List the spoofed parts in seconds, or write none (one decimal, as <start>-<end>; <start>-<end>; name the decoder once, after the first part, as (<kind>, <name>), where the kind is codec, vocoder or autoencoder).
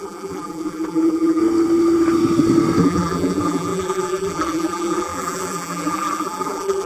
0.0-1.4 (vocoder, BigVGAN v2); 2.8-6.9